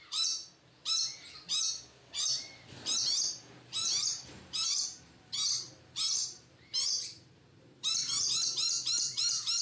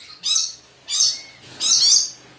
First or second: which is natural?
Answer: second